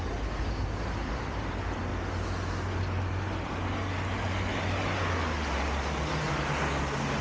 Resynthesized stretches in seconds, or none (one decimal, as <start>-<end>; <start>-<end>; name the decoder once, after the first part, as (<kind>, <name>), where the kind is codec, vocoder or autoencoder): none